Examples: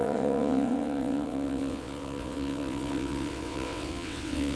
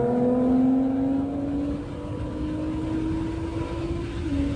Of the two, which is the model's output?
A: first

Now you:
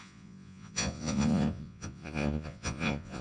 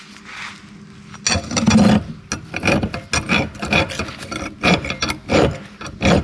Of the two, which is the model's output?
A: first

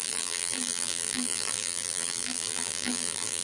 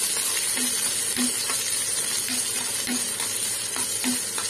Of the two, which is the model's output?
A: first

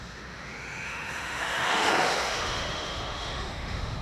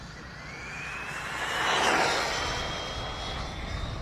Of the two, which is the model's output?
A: first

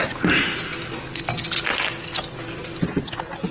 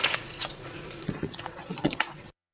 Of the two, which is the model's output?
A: second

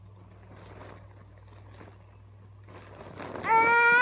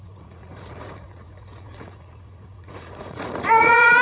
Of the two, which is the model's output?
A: second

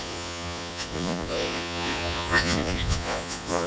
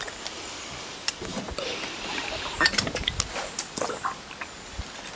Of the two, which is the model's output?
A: first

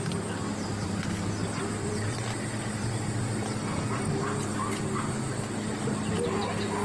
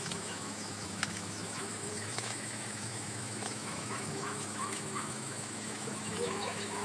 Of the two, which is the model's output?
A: second